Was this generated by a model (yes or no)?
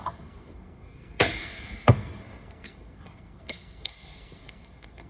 yes